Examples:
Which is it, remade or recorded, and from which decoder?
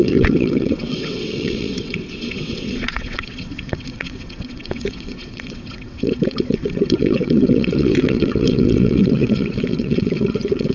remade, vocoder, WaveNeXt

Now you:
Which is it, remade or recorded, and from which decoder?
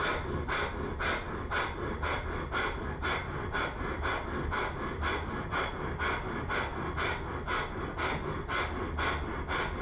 recorded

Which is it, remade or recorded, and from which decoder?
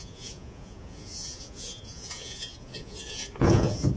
remade, vocoder, Vocos